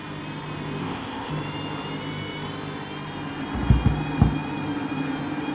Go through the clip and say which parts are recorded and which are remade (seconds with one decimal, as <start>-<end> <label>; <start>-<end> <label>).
0.0-0.8 recorded; 0.8-1.3 remade; 1.3-5.5 recorded